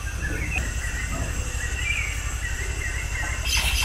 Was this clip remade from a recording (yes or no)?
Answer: no